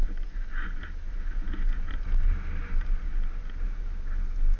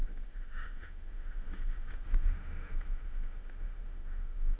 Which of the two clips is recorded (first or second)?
first